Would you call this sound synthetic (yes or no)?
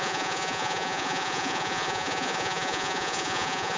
yes